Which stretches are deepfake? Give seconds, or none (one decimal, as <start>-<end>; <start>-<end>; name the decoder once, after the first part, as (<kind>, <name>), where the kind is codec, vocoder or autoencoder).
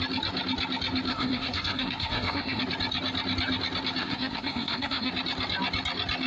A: 1.1-2.6 (codec, SNAC); 4.0-5.1